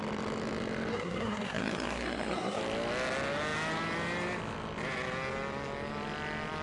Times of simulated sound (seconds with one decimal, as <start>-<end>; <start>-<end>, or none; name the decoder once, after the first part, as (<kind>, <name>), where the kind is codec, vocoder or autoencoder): 0.9-2.6 (codec, SNAC)